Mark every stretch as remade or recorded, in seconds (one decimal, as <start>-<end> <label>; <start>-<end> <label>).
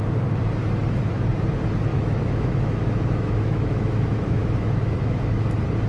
0.0-1.9 recorded; 1.9-5.4 remade; 5.4-5.9 recorded